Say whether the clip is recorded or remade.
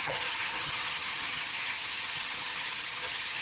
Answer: remade